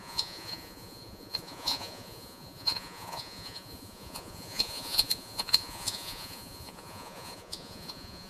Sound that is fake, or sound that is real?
fake